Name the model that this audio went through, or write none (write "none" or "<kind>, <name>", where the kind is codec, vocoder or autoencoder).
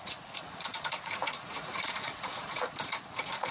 vocoder, Vocos